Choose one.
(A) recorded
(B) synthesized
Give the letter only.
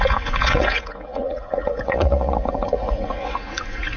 B